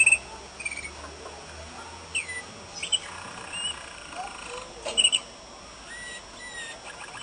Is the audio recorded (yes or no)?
yes